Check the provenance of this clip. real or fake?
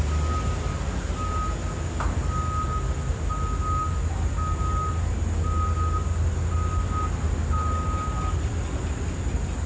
real